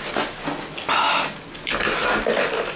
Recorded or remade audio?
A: recorded